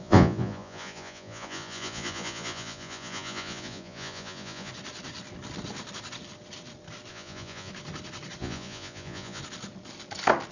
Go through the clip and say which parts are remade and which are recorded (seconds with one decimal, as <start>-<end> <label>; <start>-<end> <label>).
0.0-4.7 remade; 4.7-7.1 recorded; 7.1-7.7 remade; 7.7-8.4 recorded; 8.4-9.4 remade; 9.4-10.5 recorded